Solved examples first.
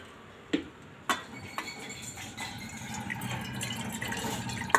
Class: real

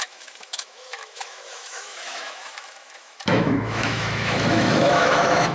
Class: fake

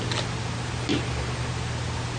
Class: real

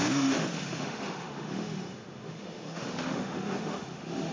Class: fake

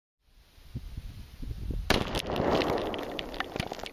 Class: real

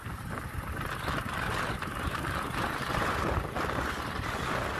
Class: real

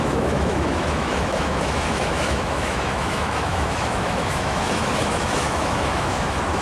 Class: fake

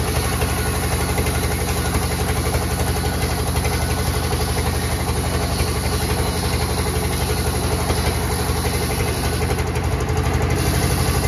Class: real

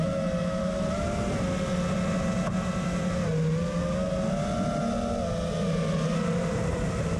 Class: real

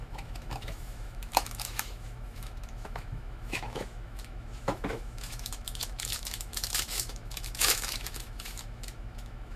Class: fake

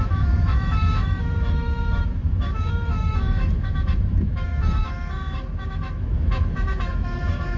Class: fake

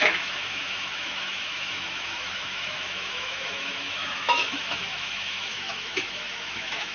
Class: fake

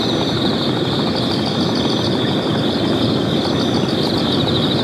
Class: real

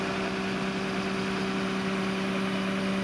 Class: real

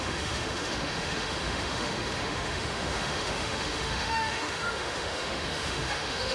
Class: fake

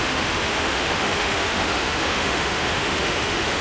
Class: fake